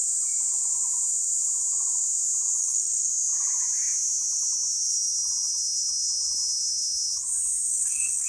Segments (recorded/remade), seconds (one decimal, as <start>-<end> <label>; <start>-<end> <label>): 0.0-2.6 recorded; 2.6-3.1 remade; 3.1-7.7 recorded; 7.7-8.3 remade